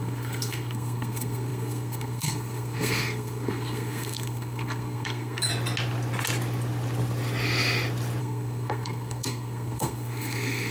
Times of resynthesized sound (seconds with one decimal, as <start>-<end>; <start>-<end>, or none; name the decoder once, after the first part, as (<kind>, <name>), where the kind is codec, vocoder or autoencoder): 0.0-5.5 (codec, SNAC); 8.2-10.7